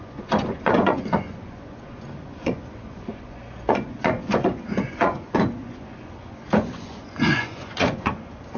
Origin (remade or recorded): remade